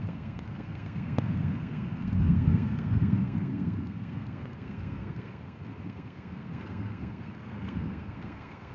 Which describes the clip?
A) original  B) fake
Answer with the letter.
B